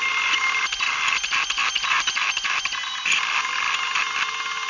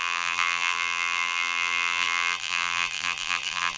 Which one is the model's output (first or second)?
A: second